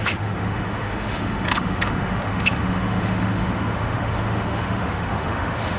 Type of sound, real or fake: fake